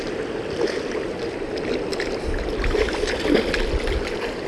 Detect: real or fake real